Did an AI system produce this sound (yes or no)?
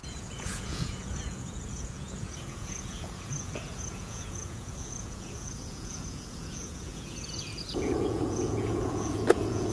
yes